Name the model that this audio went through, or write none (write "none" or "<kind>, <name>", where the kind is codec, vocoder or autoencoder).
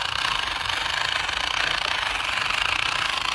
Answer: none